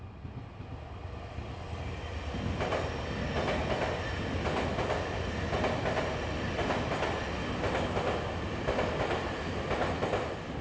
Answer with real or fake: real